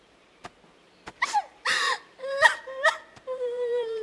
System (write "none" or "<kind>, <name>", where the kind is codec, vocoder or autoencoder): vocoder, BigVGAN v2